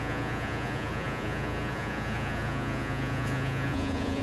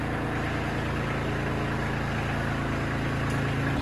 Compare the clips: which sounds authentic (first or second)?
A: second